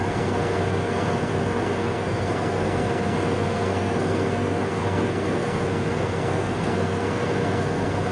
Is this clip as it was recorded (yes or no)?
no